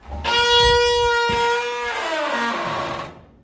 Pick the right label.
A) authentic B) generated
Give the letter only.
A